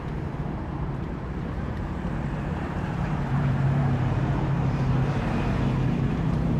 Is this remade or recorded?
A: remade